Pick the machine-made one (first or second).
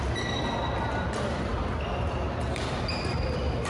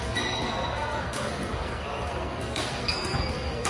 second